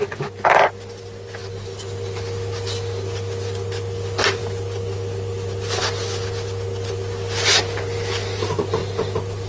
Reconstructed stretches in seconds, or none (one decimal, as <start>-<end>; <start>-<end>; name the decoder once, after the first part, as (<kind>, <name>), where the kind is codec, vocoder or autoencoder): none